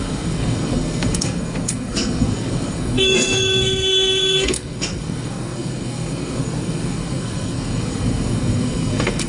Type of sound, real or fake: fake